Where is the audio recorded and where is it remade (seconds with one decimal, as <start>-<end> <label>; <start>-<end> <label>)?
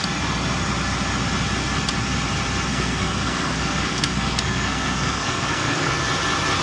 0.0-2.7 recorded; 2.7-5.9 remade; 5.9-6.6 recorded